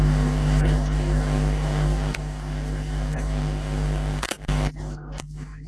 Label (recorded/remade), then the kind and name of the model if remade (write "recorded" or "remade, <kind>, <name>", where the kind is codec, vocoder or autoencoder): remade, codec, DAC